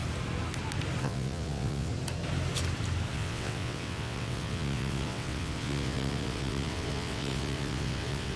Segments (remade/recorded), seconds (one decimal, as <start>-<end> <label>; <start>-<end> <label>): 0.0-1.0 recorded; 1.0-1.9 remade; 1.9-3.1 recorded; 3.1-8.4 remade